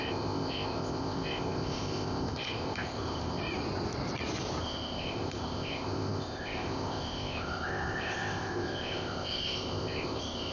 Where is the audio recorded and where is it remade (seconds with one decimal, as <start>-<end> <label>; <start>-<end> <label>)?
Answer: 0.0-3.4 remade; 3.4-4.6 recorded; 4.6-10.5 remade